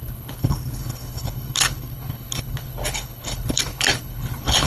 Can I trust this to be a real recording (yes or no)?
no